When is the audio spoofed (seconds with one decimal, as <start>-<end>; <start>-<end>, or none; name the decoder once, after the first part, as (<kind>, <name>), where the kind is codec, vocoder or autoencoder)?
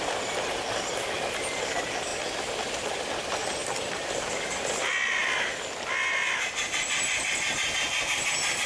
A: none